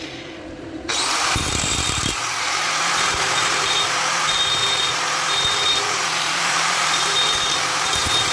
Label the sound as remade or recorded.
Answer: remade